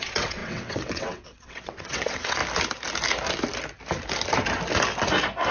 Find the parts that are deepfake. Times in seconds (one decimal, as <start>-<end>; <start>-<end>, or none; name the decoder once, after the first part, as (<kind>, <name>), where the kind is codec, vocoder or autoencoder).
0.0-2.4 (vocoder, WaveNeXt)